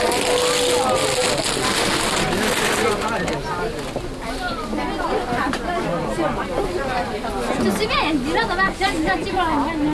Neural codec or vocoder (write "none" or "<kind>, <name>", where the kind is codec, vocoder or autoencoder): none